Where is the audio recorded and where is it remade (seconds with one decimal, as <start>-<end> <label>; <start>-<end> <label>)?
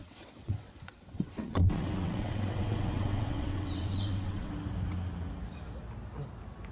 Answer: 0.0-4.5 remade; 4.5-6.7 recorded